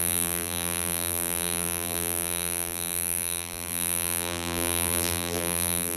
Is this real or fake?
fake